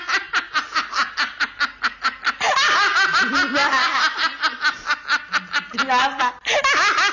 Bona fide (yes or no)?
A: yes